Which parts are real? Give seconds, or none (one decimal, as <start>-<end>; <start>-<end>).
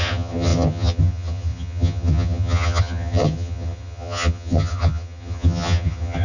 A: none